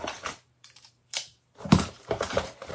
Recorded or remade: remade